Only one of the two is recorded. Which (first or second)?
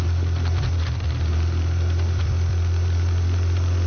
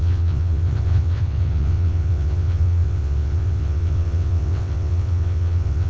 first